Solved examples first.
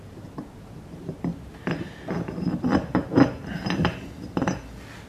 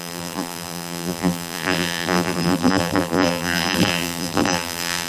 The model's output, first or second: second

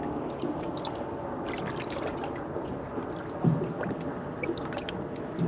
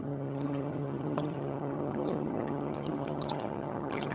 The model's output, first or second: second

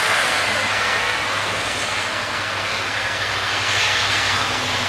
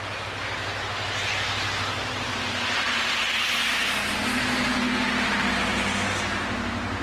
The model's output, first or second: first